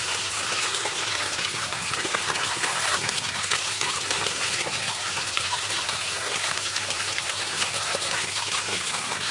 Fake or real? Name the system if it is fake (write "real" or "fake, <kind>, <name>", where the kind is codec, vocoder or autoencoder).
fake, codec, SNAC